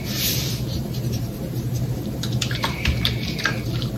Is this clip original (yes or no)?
no